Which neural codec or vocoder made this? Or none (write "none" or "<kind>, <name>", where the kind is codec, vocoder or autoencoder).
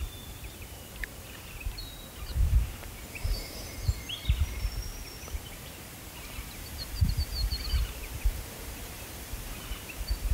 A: vocoder, BigVGAN v2